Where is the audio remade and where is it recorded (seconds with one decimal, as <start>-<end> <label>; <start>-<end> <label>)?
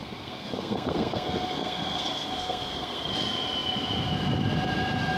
0.0-3.1 remade; 3.1-5.2 recorded